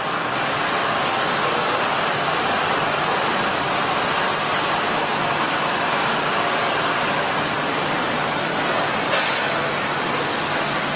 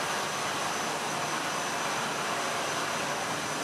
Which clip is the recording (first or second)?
second